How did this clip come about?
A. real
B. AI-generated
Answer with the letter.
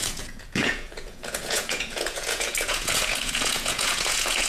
B